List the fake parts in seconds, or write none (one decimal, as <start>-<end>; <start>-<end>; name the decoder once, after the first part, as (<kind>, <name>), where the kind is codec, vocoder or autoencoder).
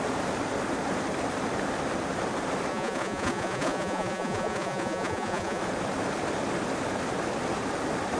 2.7-5.6 (vocoder, Vocos)